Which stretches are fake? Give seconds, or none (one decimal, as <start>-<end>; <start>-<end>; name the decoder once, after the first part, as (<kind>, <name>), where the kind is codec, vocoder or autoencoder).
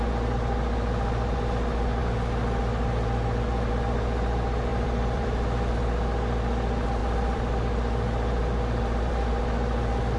4.7-5.7 (vocoder, BigVGAN v2); 7.0-9.1